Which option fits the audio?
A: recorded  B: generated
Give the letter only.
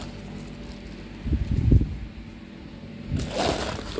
A